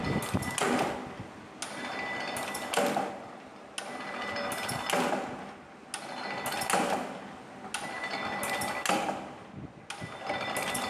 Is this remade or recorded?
recorded